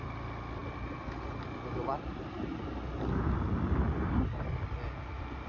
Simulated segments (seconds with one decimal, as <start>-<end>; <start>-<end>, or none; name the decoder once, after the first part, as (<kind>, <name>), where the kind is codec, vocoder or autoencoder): none